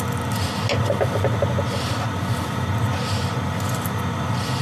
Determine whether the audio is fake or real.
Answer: real